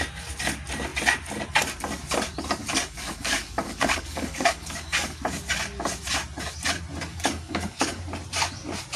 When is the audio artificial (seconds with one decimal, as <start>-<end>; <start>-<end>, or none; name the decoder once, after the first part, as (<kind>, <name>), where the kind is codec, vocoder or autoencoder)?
2.6-5.2 (codec, DAC); 7.1-8.0